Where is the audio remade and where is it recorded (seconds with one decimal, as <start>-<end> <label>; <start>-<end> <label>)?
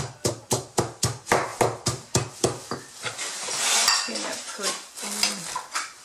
0.0-6.0 recorded